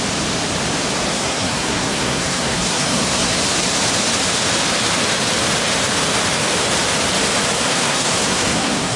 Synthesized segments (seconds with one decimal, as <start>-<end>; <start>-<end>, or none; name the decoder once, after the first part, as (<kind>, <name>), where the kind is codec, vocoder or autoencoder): 1.1-3.4 (codec, SNAC); 7.7-9.0